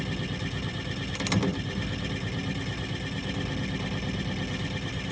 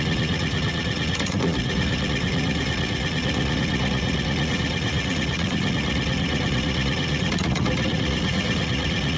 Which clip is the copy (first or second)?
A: second